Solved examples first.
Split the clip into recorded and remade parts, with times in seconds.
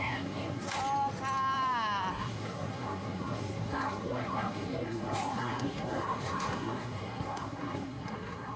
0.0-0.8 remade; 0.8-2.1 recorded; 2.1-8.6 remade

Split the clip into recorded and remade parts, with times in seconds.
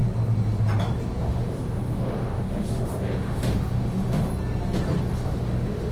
0.0-1.2 recorded; 1.2-4.3 remade; 4.3-5.0 recorded; 5.0-5.9 remade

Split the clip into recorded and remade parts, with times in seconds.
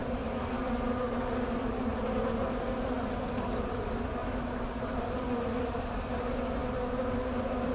0.0-7.7 recorded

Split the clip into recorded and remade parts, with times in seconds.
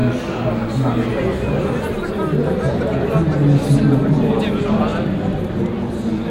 0.0-6.3 recorded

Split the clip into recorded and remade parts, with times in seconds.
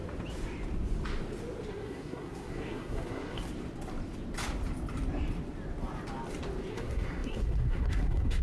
0.0-1.7 recorded; 1.7-3.4 remade; 3.4-6.7 recorded; 6.7-8.4 remade